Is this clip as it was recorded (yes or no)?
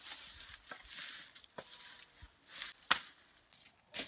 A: yes